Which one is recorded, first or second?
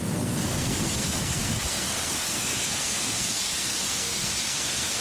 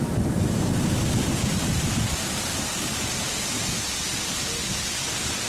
second